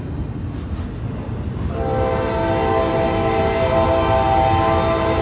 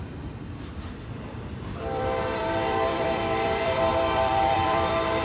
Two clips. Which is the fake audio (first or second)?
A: second